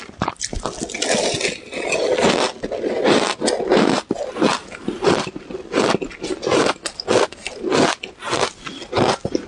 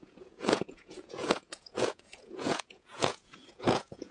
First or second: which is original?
first